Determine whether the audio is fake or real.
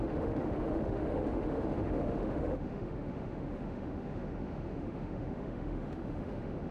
fake